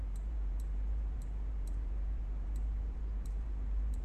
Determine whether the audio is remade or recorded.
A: remade